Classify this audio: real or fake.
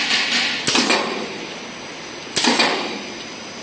real